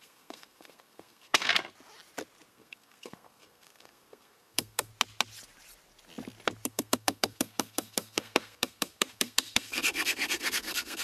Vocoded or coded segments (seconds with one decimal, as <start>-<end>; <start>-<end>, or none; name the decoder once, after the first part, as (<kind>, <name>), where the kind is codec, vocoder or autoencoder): 0.0-1.5 (codec, SNAC); 2.5-4.9; 6.7-11.0